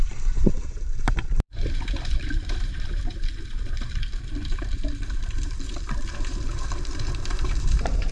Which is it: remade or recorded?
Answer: remade